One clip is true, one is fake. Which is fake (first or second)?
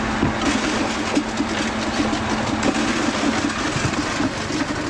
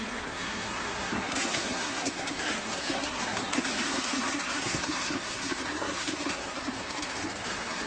second